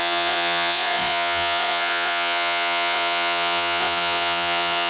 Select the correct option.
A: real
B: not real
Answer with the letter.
B